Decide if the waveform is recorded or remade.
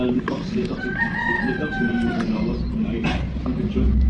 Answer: recorded